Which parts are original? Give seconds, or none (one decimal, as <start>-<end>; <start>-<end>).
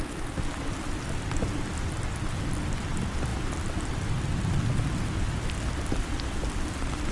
0.0-7.1